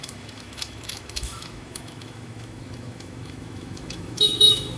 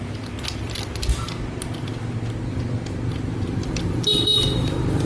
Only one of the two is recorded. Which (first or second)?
second